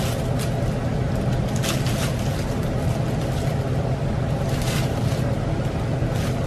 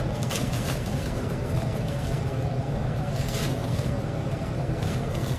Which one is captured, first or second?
first